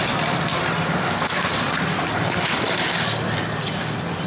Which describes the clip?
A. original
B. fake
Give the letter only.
A